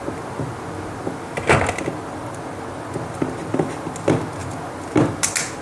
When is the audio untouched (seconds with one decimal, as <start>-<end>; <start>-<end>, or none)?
0.0-5.6